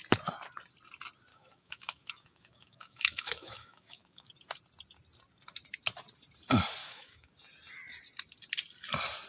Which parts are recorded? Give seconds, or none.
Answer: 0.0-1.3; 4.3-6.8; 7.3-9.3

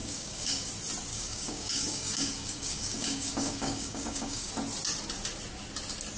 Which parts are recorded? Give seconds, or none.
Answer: 0.7-1.1; 4.5-6.2